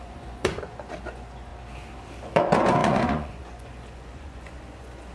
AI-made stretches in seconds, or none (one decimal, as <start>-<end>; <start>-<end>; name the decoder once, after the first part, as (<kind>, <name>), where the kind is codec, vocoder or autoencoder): 0.0-1.5 (vocoder, Vocos); 2.2-5.1